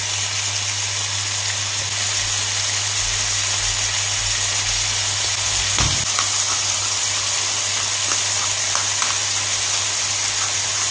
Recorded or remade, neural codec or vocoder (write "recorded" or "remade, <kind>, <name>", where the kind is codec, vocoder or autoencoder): recorded